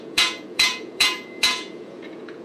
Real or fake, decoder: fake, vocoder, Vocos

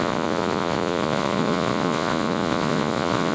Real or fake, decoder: fake, vocoder, Vocos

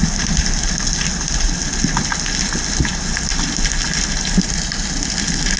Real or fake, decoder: real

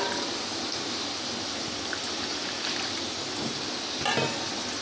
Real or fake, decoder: real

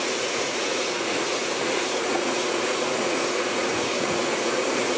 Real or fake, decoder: fake, vocoder, Vocos